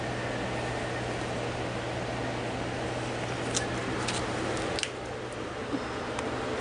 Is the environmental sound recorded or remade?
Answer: recorded